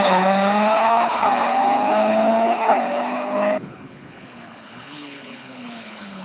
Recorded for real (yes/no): no